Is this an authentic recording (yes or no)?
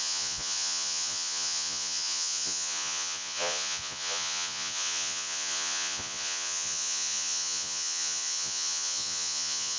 no